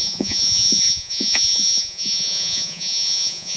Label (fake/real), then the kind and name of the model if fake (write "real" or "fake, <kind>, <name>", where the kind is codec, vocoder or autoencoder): fake, vocoder, Vocos